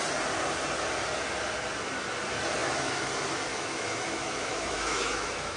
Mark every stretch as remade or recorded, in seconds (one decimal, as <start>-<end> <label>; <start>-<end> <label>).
0.0-2.6 recorded; 2.6-3.1 remade; 3.1-3.5 recorded; 3.5-5.6 remade